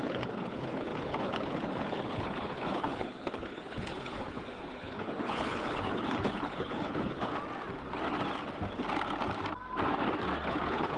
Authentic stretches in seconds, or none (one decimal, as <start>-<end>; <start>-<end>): 7.3-10.5

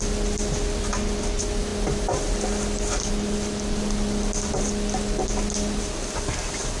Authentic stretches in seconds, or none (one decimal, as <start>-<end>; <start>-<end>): 0.0-6.8

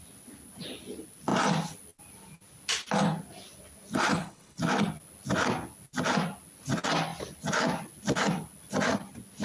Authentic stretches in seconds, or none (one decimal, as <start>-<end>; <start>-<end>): 0.0-4.1; 4.6-9.4

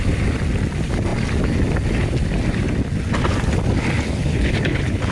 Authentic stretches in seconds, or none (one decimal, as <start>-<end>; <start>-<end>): 0.0-4.2

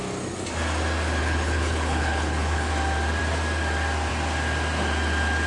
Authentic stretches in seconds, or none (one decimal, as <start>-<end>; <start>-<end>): 0.0-1.2; 2.7-5.5

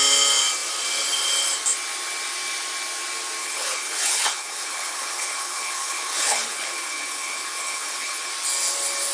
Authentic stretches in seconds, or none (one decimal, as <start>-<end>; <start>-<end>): 0.0-3.4; 8.3-9.1